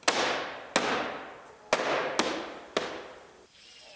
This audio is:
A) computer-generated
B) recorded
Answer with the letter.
B